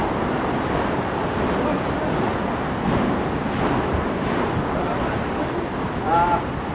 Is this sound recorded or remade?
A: recorded